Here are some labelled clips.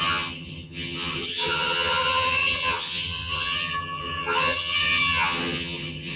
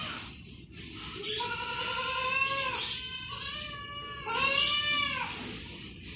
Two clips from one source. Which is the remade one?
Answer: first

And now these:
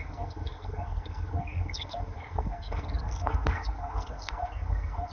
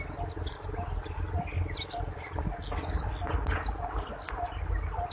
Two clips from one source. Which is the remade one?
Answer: first